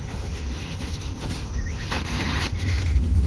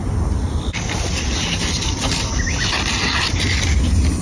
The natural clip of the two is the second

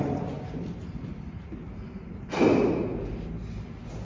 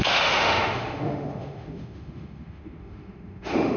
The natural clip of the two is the first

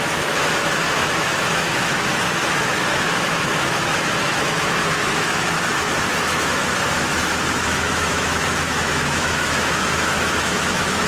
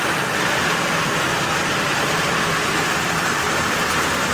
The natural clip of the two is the second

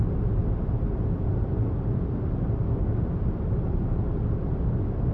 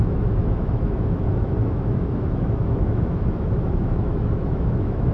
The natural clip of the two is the first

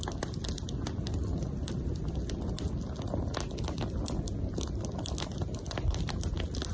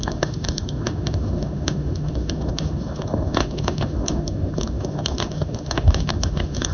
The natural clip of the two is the first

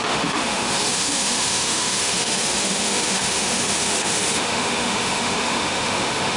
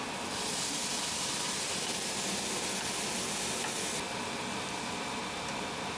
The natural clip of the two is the second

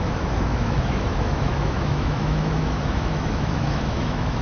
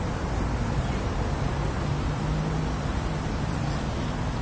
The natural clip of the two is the second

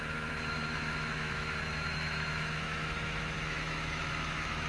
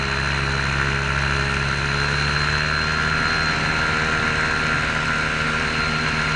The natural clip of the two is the second